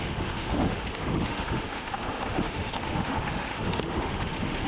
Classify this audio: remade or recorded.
remade